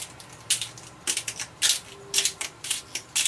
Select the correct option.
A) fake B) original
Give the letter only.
B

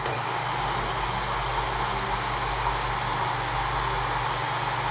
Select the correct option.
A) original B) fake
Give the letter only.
A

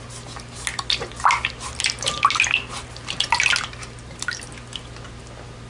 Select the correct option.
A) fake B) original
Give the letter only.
B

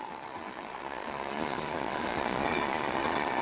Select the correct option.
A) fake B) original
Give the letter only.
A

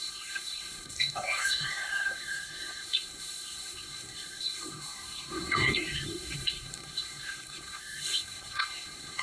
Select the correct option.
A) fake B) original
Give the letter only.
A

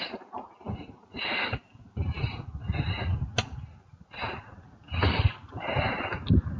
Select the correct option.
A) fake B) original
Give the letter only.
B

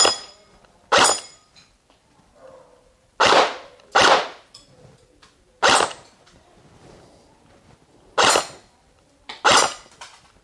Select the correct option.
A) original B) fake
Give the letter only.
A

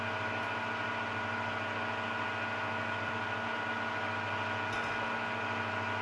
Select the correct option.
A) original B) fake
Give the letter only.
A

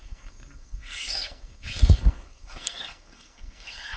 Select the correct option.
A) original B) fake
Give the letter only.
B